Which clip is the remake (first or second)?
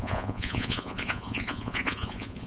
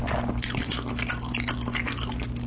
first